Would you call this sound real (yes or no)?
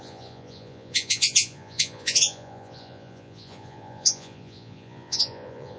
no